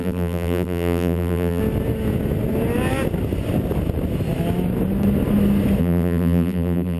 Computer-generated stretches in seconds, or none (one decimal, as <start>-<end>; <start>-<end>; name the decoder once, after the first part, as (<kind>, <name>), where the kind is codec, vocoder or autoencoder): 0.0-1.6 (vocoder, BigVGAN v2); 5.8-7.0